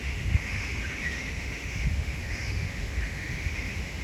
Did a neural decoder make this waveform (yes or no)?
yes